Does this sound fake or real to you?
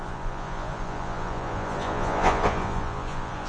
fake